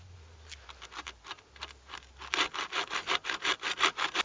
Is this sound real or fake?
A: real